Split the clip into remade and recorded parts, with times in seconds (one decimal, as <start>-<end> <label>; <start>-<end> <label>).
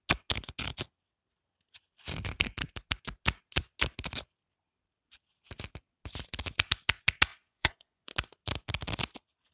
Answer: 0.0-7.3 recorded; 7.3-8.1 remade; 8.1-9.5 recorded